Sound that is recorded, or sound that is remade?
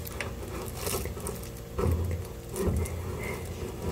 recorded